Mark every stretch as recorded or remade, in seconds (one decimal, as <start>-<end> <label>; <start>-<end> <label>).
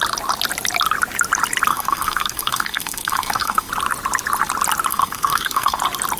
0.0-1.7 recorded; 1.7-3.7 remade; 3.7-4.9 recorded; 4.9-5.8 remade; 5.8-6.2 recorded